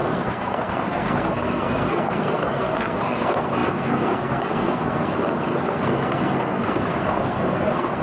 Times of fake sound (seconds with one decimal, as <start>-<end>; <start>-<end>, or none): 0.0-8.0